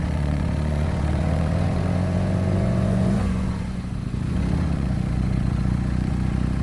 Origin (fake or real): fake